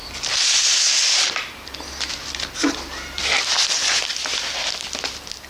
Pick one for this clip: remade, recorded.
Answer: remade